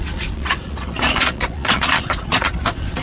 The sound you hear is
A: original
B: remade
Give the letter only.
B